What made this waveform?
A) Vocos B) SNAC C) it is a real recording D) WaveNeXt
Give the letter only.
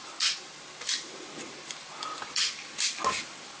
C